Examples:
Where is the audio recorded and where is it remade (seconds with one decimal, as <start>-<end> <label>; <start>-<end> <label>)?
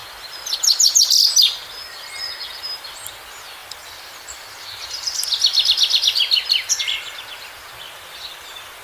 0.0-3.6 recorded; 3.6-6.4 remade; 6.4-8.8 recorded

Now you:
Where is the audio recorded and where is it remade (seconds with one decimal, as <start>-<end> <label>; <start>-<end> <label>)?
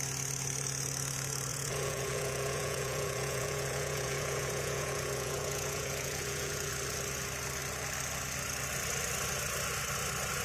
0.0-1.5 recorded; 1.5-6.7 remade; 6.7-10.4 recorded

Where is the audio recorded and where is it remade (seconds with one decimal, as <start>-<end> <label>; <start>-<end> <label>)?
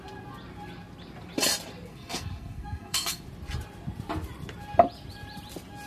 0.0-1.9 recorded; 1.9-3.2 remade; 3.2-5.9 recorded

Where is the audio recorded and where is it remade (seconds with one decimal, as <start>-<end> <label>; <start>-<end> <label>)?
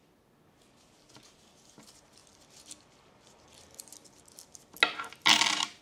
0.0-5.8 recorded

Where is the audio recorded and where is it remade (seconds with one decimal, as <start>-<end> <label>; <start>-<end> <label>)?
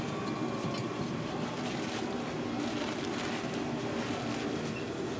0.0-0.8 recorded; 0.8-1.3 remade; 1.3-5.2 recorded